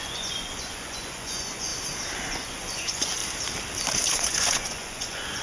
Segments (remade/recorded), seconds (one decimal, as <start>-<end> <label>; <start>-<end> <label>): 0.0-1.7 remade; 1.7-2.3 recorded; 2.3-3.2 remade; 3.2-4.1 recorded; 4.1-5.4 remade